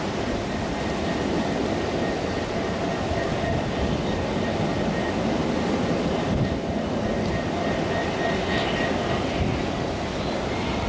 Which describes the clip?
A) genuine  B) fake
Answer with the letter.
A